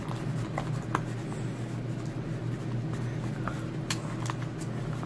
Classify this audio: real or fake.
real